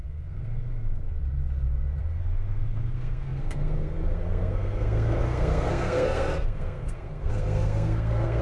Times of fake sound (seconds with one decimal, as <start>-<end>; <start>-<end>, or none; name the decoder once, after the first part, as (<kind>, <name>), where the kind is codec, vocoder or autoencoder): 0.0-1.0 (codec, SNAC); 2.0-8.4